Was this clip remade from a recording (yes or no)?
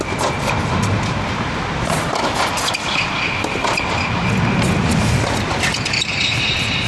no